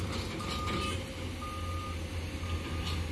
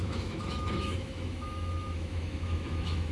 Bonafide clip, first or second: first